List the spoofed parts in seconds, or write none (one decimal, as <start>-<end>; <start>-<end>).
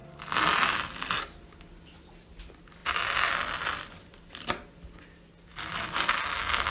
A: none